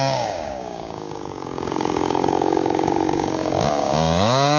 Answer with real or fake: fake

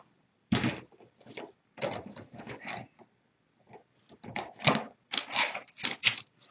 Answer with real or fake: real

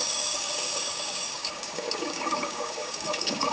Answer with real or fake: fake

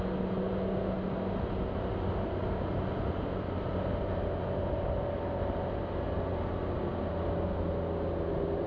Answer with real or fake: real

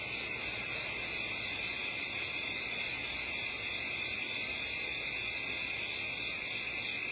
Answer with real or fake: real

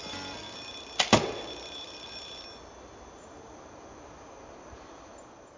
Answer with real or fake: real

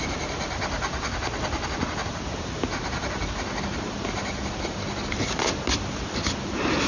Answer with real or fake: real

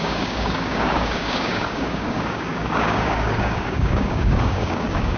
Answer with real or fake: fake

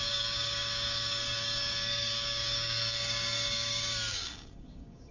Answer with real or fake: fake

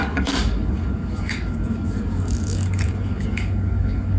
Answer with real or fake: fake